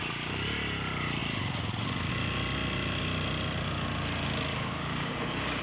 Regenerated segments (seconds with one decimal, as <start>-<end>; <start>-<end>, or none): 4.5-5.6